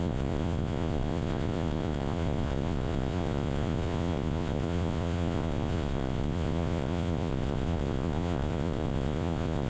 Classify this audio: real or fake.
fake